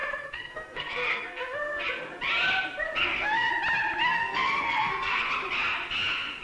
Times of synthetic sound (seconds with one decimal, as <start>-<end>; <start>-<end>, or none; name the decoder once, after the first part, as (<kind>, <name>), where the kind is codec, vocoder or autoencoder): 0.0-1.8 (codec, SNAC); 3.0-3.5; 4.0-5.3